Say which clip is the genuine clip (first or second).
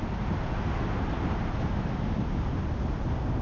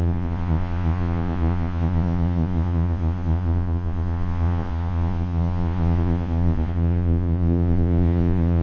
first